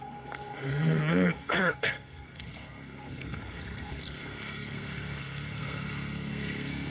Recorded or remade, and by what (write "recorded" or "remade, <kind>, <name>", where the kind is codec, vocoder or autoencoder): remade, codec, SNAC